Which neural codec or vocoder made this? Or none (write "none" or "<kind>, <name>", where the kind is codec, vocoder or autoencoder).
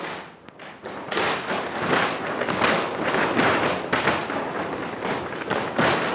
none